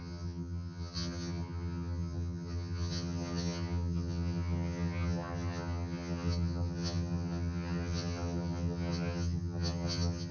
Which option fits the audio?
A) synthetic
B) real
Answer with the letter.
A